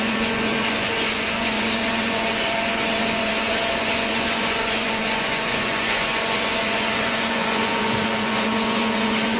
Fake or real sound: fake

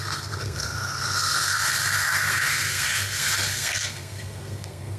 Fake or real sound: fake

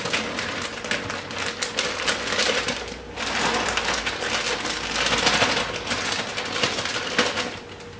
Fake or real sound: real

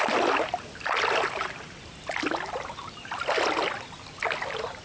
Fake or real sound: real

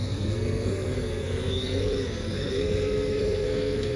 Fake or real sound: fake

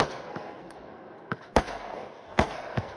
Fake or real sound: fake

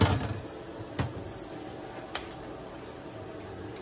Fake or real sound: real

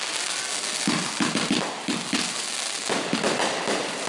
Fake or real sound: real